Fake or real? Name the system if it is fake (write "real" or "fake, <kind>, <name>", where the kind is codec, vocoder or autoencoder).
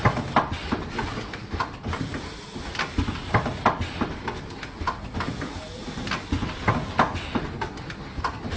real